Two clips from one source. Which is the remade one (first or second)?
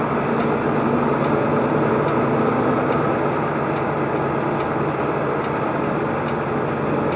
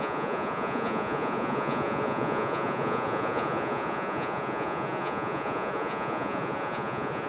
second